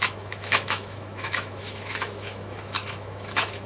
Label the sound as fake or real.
fake